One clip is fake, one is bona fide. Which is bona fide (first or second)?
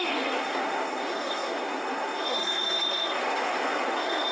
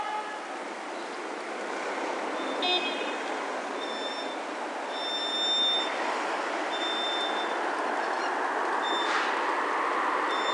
second